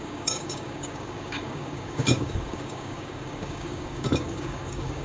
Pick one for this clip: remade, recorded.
remade